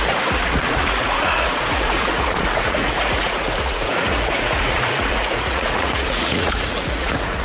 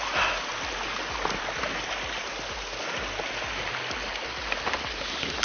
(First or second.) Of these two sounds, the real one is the second